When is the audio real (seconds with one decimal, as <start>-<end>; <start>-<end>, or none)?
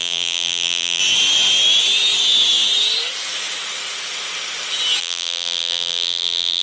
1.0-5.0